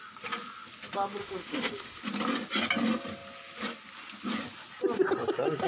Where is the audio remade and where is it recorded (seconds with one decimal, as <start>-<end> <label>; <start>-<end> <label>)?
0.0-1.2 recorded; 1.2-2.0 remade; 2.0-5.7 recorded